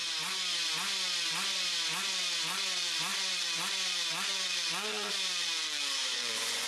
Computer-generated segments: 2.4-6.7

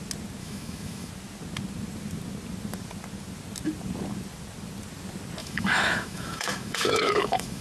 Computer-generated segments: 0.4-1.1; 5.4-7.6

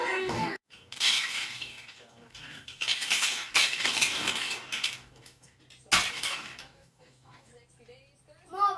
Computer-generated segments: 0.0-5.6; 6.1-7.5